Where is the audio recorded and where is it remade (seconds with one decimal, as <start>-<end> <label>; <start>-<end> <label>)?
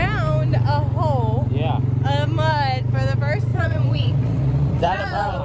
0.0-3.5 recorded; 3.5-5.4 remade